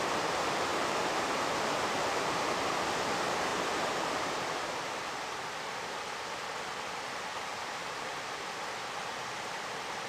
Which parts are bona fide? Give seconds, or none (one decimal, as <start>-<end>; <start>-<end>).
0.0-0.7; 2.5-3.5; 4.9-7.5; 8.4-10.1